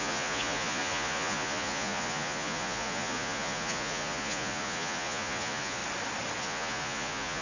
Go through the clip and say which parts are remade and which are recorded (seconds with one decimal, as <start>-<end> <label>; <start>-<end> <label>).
0.0-5.8 remade; 5.8-6.4 recorded; 6.4-7.4 remade